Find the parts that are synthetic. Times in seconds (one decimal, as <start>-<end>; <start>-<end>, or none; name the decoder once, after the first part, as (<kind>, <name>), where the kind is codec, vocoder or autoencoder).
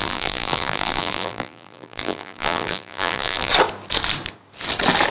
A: 0.0-3.5 (vocoder, BigVGAN v2)